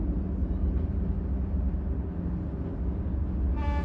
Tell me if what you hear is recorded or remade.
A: recorded